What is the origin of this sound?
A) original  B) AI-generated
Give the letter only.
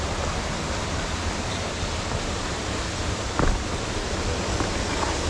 A